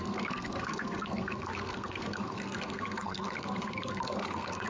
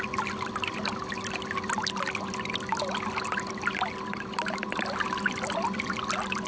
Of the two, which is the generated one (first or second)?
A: first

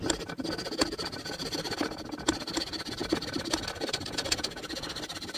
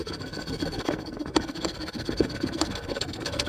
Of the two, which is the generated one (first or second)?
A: second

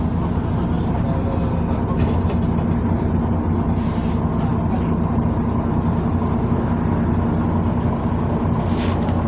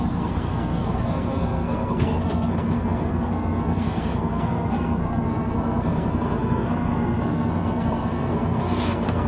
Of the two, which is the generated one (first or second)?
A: second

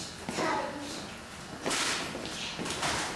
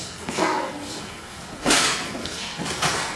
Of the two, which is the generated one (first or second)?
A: second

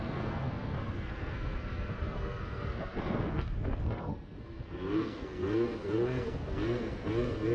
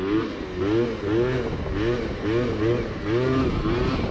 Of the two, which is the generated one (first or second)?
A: first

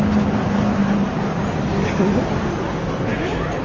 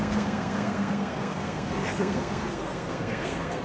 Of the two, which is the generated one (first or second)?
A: second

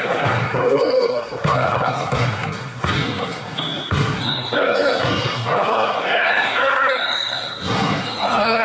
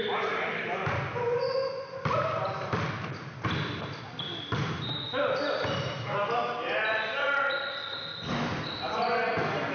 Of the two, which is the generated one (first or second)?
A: first